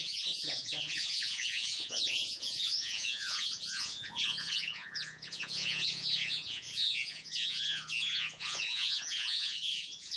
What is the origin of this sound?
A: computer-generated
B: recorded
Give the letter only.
A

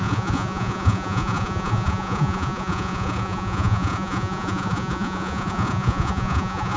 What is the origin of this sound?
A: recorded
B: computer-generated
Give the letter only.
B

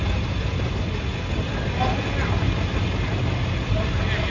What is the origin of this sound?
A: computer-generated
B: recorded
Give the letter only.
B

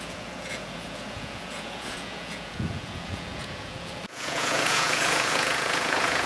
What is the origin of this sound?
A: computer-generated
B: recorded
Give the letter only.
A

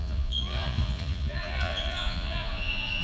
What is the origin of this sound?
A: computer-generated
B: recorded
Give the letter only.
A